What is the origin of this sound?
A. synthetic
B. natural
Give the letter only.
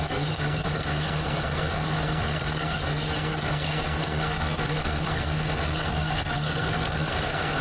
A